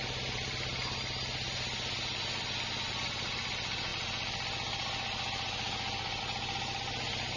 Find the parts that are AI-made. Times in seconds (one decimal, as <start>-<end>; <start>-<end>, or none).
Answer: none